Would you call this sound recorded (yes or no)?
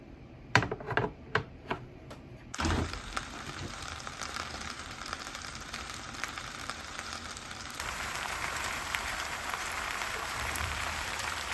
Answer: no